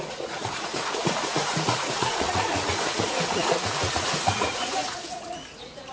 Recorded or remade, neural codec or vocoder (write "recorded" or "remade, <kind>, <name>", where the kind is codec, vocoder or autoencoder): remade, vocoder, Vocos